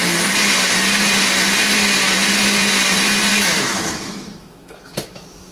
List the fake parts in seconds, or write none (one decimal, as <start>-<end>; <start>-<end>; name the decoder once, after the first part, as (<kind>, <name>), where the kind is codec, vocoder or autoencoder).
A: 3.3-5.5 (autoencoder, DAC-VAE)